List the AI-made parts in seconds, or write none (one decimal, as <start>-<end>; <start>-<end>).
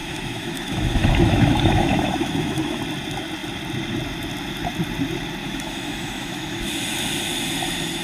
0.0-2.8; 5.4-6.7